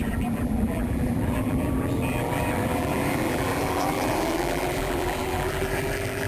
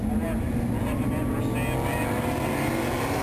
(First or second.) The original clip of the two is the second